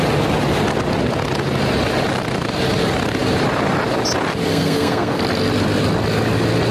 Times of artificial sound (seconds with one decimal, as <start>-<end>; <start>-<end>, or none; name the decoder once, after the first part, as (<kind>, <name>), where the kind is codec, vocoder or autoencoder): 4.5-5.2 (codec, SNAC)